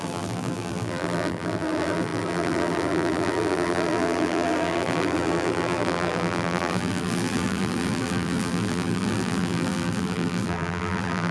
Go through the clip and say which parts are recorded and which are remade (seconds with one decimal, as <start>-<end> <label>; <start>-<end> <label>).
0.0-11.3 remade